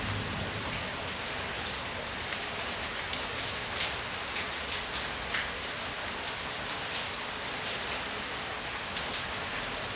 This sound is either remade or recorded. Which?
recorded